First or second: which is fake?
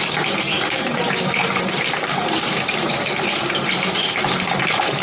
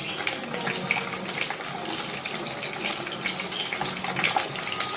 first